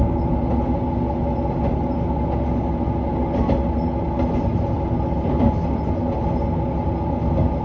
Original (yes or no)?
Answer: yes